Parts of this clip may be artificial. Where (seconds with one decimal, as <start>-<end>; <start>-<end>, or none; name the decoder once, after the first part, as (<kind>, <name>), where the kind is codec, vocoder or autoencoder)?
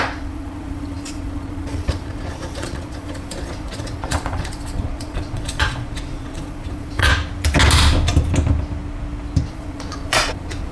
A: 0.0-7.1 (vocoder, Vocos); 9.5-10.7